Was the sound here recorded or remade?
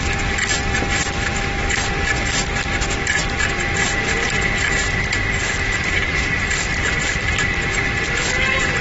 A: recorded